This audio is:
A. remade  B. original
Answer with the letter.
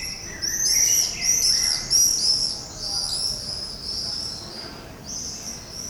A